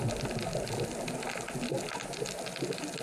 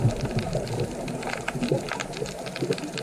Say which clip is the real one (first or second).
first